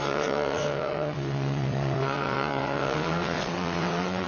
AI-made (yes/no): yes